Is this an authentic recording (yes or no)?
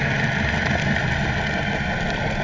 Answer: yes